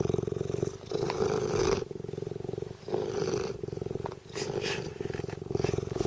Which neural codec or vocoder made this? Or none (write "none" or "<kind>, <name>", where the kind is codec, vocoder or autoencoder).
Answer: vocoder, BigVGAN v2